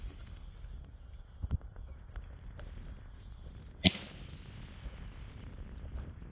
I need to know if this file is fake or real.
real